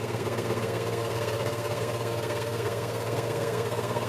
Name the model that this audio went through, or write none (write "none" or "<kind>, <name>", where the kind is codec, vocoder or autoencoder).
codec, SNAC